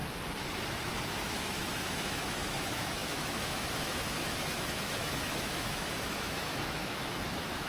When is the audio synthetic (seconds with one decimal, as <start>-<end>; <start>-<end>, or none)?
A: 1.0-7.7